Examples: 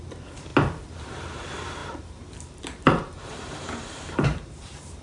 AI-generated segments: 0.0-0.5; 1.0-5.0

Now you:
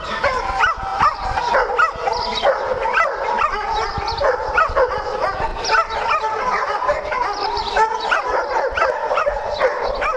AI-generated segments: 0.9-1.4; 5.5-10.2

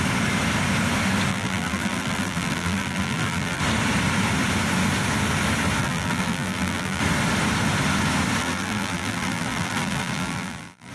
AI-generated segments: 1.3-3.6; 5.8-7.0; 8.4-10.9

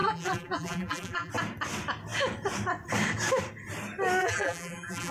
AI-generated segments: 0.0-1.3; 4.2-5.1

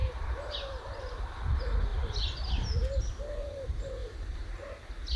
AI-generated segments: 0.0-1.0; 4.0-4.8